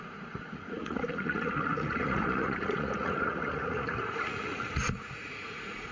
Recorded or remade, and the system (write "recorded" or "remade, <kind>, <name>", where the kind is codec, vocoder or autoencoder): remade, vocoder, Vocos